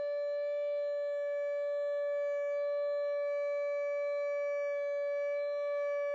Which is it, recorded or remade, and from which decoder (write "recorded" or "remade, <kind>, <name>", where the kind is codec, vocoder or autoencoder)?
recorded